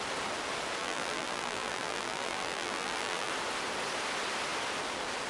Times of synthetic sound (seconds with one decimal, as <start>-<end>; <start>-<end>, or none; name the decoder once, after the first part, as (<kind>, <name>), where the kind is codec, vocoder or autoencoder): 0.8-3.3 (vocoder, BigVGAN v2)